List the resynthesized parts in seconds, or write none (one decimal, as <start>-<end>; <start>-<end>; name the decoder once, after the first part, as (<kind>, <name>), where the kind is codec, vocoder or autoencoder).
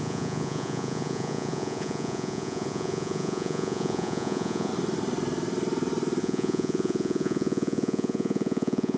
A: 0.0-4.7 (vocoder, Vocos); 6.2-9.0